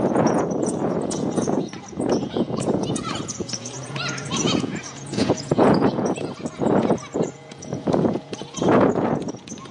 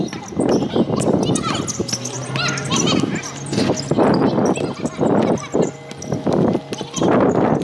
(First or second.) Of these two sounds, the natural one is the second